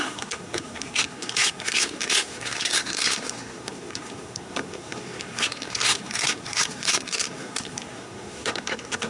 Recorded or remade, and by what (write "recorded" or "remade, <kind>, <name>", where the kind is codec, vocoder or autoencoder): remade, codec, SNAC